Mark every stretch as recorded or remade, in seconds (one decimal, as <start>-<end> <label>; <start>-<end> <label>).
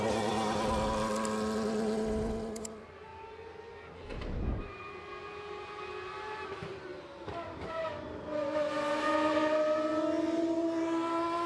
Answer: 0.0-11.5 recorded